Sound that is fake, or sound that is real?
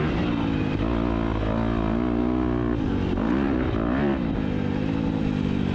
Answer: real